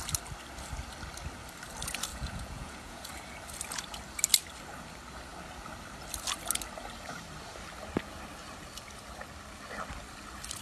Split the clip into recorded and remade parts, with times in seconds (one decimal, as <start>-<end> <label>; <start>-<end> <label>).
0.0-2.1 recorded; 2.1-3.1 remade; 3.1-10.6 recorded